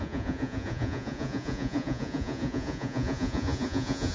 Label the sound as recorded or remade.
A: remade